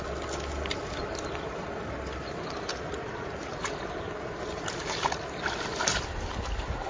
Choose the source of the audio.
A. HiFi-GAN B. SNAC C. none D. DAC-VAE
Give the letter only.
C